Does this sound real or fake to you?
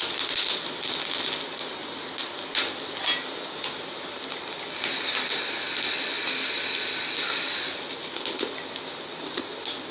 real